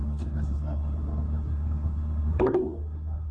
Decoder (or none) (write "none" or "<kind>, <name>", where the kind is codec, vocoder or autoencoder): codec, SNAC